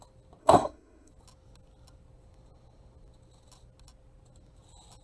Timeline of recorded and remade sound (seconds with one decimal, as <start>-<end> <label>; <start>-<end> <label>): 0.0-0.4 recorded; 0.4-1.1 remade; 1.1-5.0 recorded